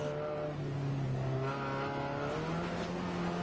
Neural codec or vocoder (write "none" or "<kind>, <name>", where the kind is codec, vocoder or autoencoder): none